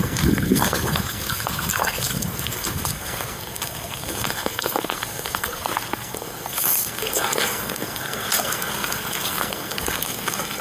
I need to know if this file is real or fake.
fake